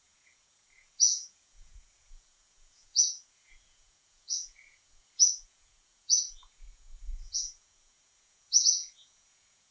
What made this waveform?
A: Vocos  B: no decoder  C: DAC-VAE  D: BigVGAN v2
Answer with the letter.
A